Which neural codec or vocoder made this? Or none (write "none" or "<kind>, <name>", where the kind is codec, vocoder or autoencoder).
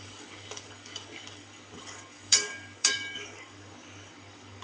codec, DAC